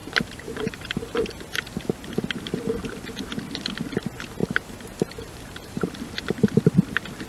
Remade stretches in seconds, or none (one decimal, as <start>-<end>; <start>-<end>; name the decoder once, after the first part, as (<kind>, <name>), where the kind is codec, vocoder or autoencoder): 0.0-1.4 (vocoder, BigVGAN v2); 4.4-6.0